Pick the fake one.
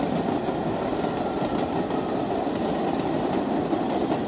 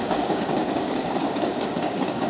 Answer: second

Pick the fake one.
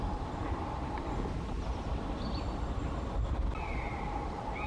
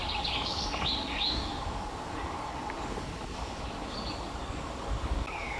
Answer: second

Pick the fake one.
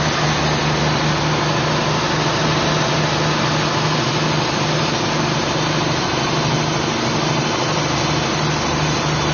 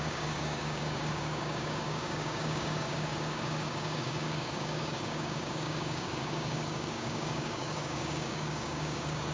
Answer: second